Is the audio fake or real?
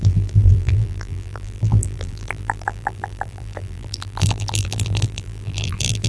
fake